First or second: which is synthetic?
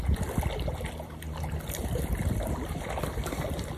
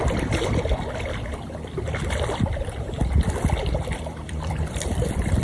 second